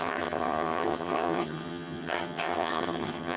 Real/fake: fake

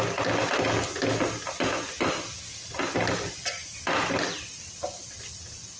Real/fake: real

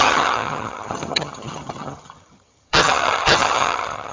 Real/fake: fake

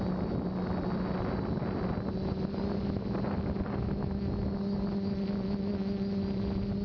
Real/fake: real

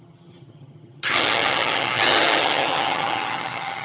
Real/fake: fake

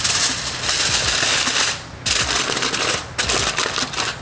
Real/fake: real